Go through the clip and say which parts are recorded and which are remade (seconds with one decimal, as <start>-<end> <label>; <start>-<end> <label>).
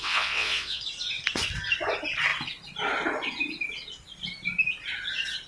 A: 0.0-0.8 remade; 0.8-5.5 recorded